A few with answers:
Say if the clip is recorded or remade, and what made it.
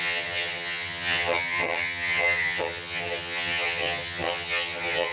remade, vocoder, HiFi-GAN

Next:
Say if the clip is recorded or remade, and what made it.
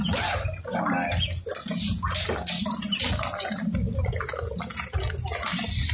recorded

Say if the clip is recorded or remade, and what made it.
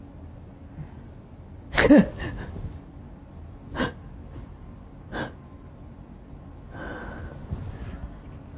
recorded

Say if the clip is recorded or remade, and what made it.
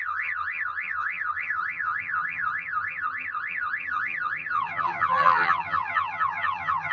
remade, vocoder, HiFi-GAN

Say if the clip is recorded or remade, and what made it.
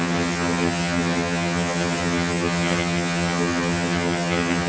remade, vocoder, HiFi-GAN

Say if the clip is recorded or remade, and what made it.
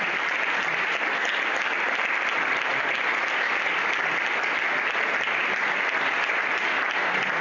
recorded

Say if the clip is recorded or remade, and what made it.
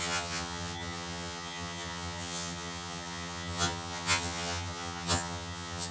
remade, vocoder, HiFi-GAN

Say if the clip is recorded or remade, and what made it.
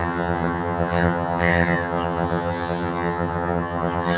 remade, vocoder, HiFi-GAN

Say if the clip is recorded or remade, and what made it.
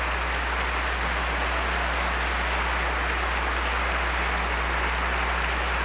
recorded